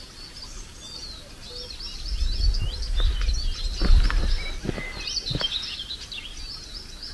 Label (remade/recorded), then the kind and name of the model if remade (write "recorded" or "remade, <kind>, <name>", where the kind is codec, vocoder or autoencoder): recorded